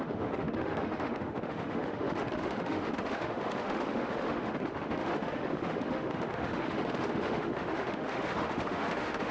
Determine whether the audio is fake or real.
fake